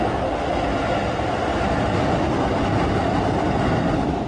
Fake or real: real